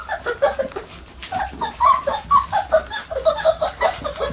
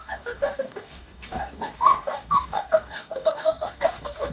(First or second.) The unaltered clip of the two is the first